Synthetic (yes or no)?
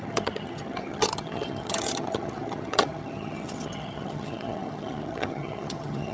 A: yes